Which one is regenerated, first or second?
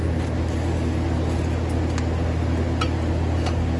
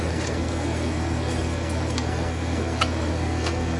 second